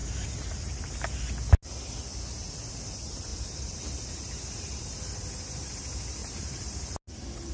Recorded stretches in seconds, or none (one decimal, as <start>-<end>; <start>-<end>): 0.0-6.2; 6.8-7.5